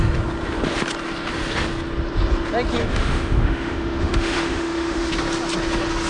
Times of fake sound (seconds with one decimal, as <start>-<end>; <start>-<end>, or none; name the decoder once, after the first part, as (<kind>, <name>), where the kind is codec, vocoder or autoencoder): 2.8-5.1 (autoencoder, DAC-VAE)